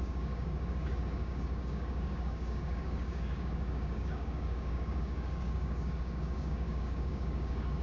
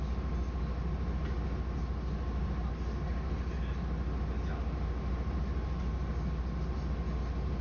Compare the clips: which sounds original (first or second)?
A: second